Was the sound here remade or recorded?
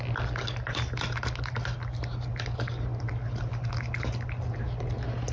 recorded